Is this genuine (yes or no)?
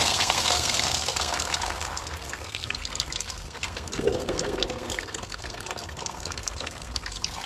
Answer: no